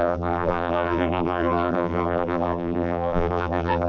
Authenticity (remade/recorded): remade